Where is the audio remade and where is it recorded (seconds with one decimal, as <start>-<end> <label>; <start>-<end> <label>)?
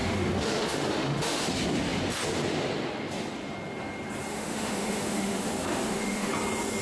0.0-1.5 remade; 1.5-4.3 recorded; 4.3-6.3 remade; 6.3-6.8 recorded